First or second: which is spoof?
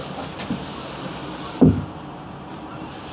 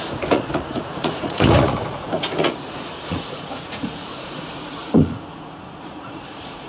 second